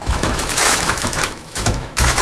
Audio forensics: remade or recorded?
remade